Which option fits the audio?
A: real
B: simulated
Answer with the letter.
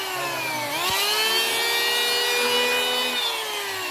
A